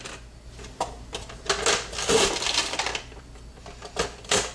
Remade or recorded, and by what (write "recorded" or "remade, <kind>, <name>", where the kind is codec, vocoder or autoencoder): recorded